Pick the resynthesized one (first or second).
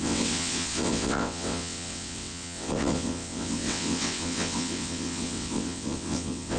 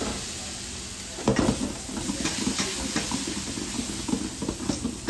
first